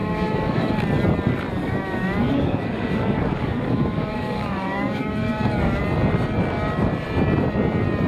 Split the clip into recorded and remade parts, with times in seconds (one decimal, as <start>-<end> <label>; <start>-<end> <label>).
0.0-0.7 remade; 0.7-1.6 recorded; 1.6-5.8 remade; 5.8-8.1 recorded